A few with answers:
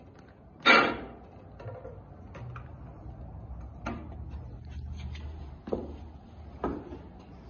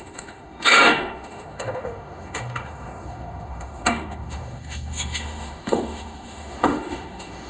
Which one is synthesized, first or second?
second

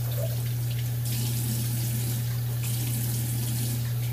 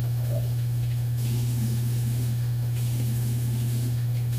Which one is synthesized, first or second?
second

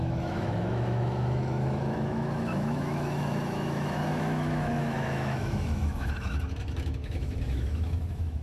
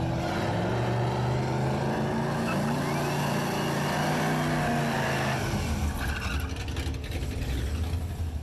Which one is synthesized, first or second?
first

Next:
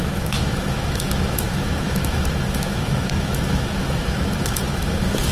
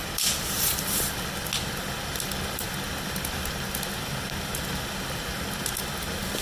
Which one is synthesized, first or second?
first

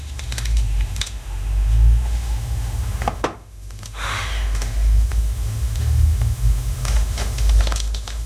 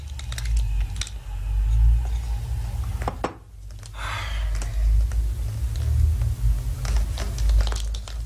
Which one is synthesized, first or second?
first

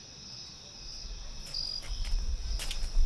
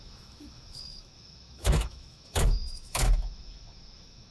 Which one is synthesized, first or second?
second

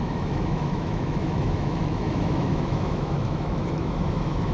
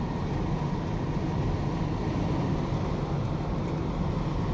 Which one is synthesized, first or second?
first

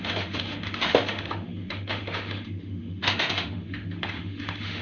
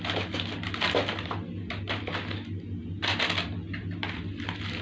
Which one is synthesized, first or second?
first